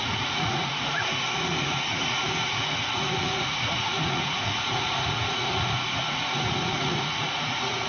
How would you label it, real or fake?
fake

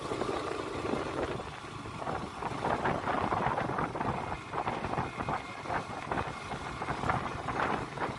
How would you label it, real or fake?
real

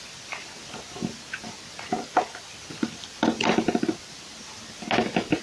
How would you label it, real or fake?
real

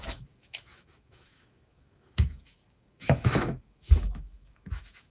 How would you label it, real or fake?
fake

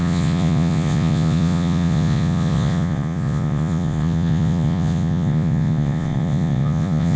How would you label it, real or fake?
fake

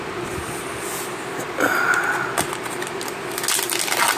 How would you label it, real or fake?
real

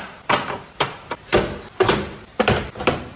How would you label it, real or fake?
real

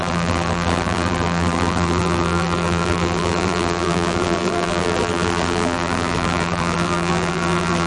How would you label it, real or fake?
fake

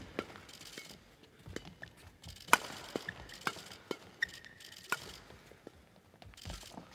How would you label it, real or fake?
real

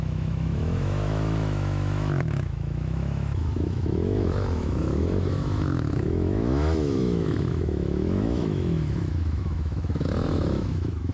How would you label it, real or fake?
fake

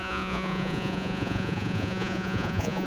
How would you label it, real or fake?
fake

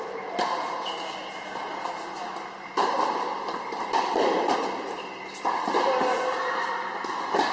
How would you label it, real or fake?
real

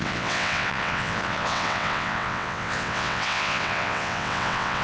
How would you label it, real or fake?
fake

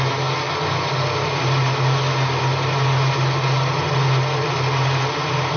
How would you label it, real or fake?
real